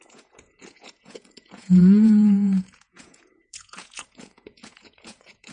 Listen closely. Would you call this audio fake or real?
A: fake